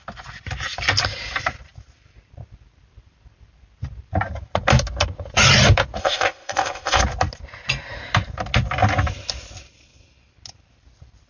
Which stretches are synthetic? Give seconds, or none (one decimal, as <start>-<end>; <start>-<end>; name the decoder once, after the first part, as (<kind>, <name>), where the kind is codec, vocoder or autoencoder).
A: 6.0-7.0 (codec, ZipCodec)